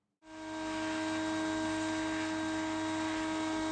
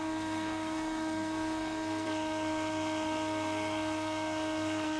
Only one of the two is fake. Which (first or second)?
second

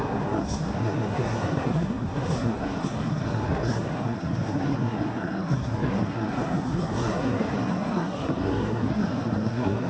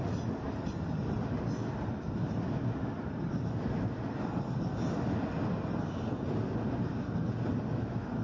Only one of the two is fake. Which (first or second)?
first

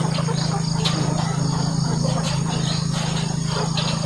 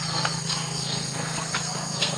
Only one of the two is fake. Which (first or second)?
second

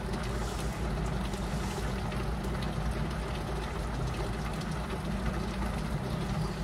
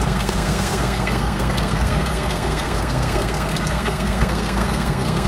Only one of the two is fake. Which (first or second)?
second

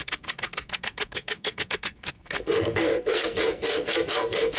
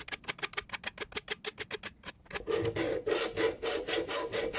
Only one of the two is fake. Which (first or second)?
first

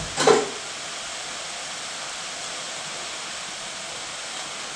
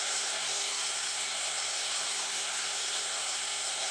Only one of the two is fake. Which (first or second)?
second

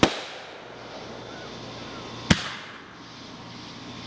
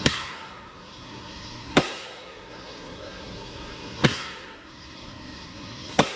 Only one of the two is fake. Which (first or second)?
second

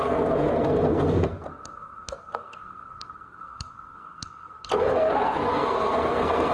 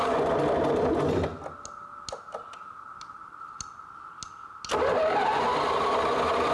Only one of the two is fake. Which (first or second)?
first